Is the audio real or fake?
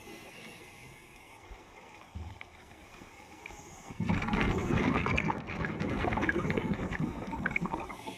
fake